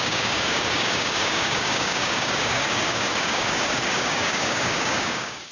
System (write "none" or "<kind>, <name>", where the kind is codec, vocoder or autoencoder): codec, DAC